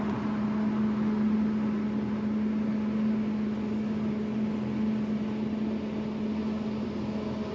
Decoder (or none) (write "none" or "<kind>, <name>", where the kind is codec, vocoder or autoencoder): none